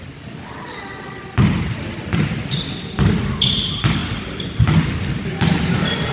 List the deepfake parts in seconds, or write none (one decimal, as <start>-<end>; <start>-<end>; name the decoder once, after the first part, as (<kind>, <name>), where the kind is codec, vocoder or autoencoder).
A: none